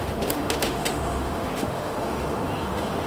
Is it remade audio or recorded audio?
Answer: remade